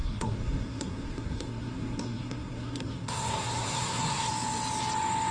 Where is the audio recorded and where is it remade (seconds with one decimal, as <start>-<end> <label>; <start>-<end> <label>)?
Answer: 0.0-4.3 remade; 4.3-5.3 recorded